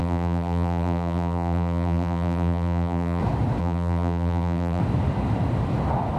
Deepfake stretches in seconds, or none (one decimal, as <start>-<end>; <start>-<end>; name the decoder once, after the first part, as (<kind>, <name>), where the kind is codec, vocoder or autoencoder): 0.0-3.2 (vocoder, BigVGAN v2); 3.6-4.8